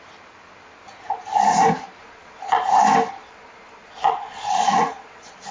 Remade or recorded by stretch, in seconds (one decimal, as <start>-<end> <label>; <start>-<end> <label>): 0.0-2.0 recorded; 2.0-2.7 remade; 2.7-3.2 recorded; 3.2-5.5 remade